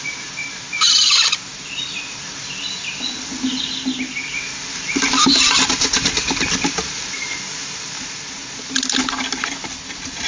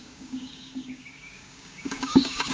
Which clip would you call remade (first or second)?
second